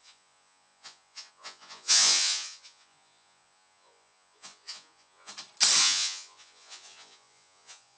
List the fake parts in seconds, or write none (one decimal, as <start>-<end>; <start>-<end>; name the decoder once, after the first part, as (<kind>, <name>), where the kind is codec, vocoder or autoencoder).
0.0-5.3 (vocoder, Vocos); 5.8-8.0